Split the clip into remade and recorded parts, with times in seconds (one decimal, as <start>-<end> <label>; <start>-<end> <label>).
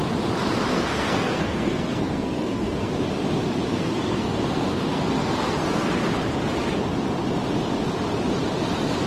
0.0-0.7 recorded; 0.7-2.9 remade; 2.9-3.7 recorded; 3.7-5.9 remade; 5.9-9.1 recorded